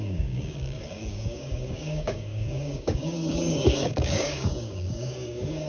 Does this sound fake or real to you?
fake